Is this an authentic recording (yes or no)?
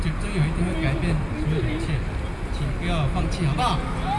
yes